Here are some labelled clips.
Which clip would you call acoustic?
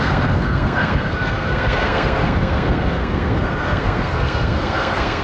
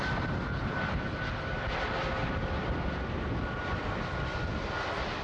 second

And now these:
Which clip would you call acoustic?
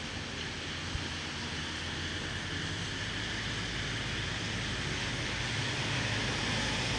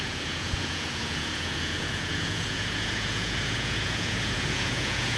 first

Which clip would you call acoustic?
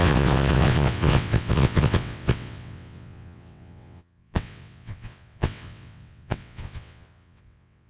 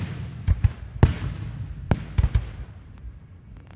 second